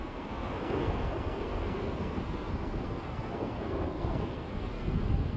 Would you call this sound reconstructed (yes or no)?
yes